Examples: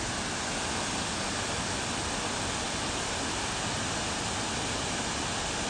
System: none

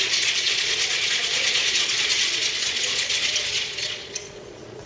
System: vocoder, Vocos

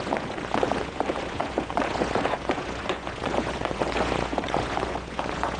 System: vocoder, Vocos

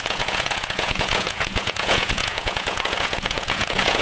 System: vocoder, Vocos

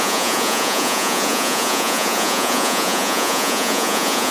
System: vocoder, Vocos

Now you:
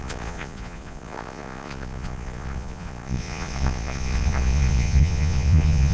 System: vocoder, Vocos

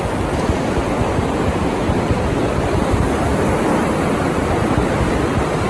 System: none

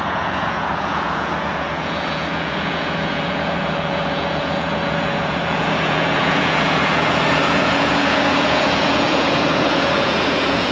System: vocoder, Vocos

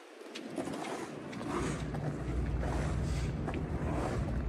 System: none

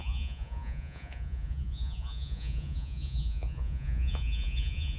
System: vocoder, Vocos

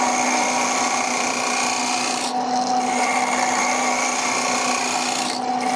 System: none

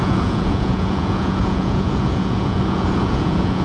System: vocoder, Vocos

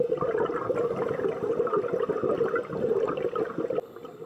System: none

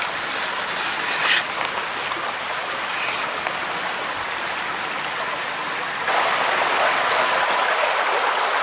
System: none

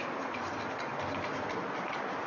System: none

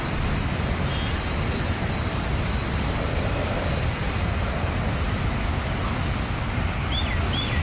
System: none